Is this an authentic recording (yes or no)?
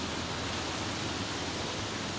yes